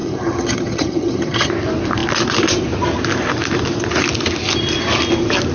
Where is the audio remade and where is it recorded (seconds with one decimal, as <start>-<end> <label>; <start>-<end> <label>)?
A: 0.0-1.5 remade; 1.5-5.5 recorded